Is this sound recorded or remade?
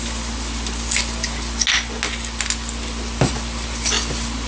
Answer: recorded